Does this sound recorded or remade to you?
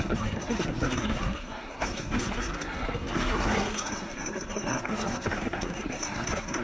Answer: remade